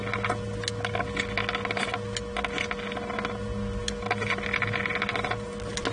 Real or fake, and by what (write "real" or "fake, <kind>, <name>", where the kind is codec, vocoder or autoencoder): real